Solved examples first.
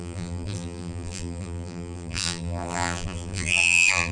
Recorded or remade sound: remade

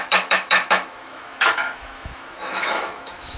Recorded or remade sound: remade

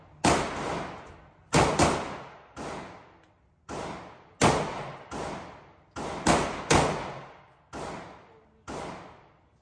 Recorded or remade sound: recorded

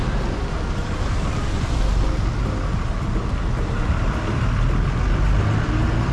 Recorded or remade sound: recorded